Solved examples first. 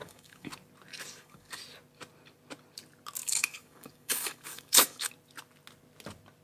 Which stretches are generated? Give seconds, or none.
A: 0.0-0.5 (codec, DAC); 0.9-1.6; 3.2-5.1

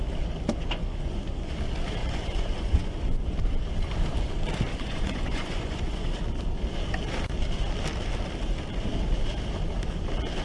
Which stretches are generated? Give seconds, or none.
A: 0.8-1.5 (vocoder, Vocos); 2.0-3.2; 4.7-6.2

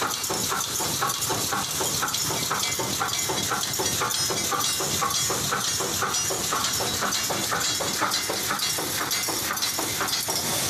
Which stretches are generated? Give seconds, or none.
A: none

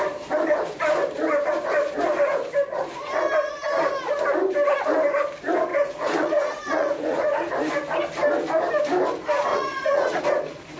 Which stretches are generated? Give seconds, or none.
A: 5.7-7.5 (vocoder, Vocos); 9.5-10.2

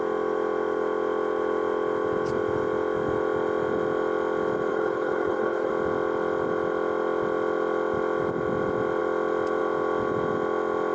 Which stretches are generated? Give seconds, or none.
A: 4.7-5.7 (codec, HILCodec)

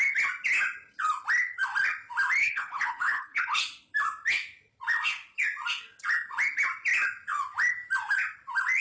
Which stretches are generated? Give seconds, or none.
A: 2.4-3.6 (codec, HILCodec)